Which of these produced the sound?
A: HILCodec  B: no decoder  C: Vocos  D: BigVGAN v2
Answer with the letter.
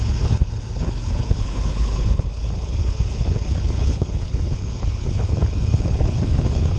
A